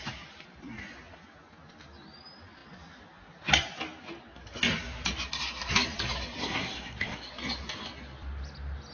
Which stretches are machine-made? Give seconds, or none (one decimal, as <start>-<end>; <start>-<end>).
6.4-7.3

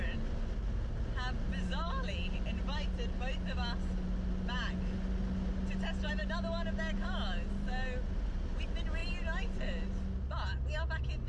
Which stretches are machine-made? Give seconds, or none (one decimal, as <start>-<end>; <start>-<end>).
none